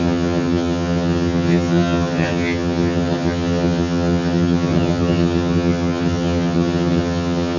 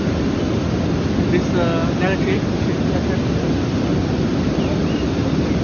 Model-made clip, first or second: first